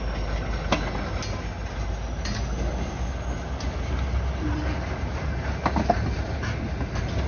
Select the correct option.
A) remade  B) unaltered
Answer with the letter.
B